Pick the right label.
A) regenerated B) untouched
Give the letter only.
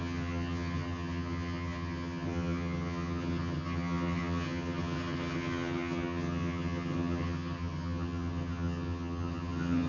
A